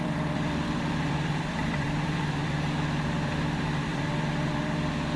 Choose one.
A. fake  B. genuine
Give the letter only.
A